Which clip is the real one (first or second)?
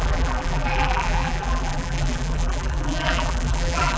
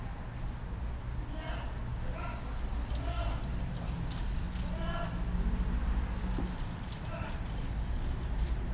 second